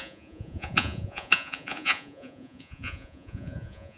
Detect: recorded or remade remade